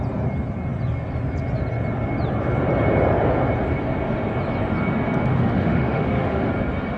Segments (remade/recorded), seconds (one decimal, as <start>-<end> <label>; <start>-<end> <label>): 0.0-5.3 recorded; 5.3-6.5 remade; 6.5-7.0 recorded